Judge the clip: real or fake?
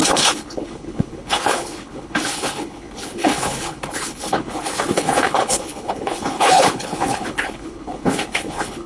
fake